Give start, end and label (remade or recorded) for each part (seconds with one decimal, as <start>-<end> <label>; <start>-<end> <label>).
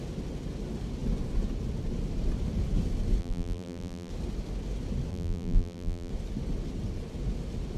0.0-3.2 recorded; 3.2-4.1 remade; 4.1-5.1 recorded; 5.1-6.1 remade; 6.1-7.8 recorded